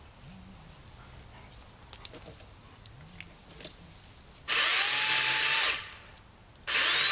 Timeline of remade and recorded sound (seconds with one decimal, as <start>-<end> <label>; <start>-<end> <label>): 0.0-7.1 recorded